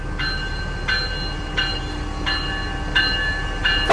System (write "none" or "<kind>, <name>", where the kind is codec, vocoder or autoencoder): none